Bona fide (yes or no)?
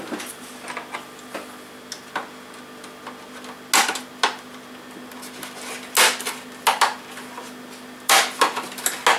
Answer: yes